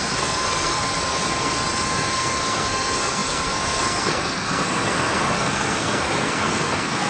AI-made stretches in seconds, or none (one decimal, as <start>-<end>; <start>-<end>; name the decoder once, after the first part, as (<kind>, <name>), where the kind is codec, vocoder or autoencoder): 0.0-7.1 (codec, SNAC)